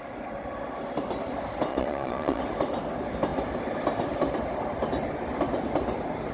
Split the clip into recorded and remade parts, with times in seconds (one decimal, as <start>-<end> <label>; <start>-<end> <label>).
0.0-1.7 recorded; 1.7-2.4 remade; 2.4-6.3 recorded